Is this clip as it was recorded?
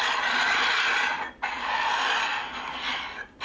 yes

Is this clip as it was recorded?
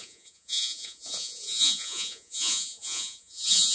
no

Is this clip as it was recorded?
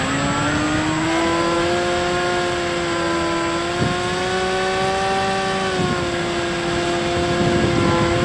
yes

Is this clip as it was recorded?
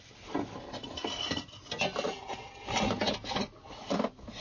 yes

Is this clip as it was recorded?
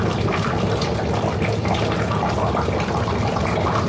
yes